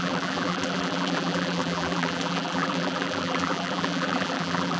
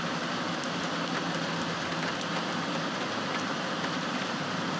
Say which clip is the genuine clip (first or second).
second